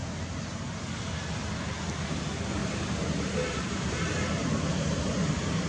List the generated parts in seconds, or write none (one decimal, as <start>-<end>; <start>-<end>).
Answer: 0.0-1.3; 2.6-3.9; 4.4-5.3